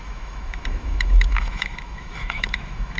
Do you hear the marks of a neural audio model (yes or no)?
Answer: yes